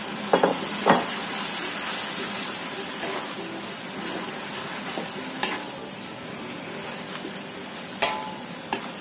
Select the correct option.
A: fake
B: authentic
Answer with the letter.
B